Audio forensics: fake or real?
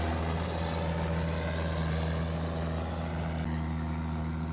real